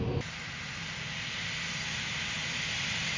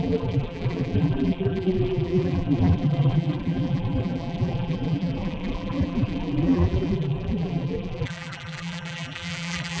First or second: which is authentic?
first